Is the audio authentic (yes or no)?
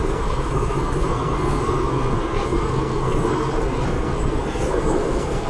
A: no